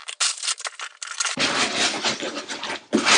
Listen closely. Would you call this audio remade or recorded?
recorded